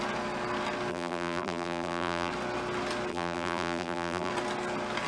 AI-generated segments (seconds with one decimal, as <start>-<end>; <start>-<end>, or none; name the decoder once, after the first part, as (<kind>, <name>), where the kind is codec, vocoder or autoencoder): 0.9-2.3 (vocoder, BigVGAN v2); 3.1-4.3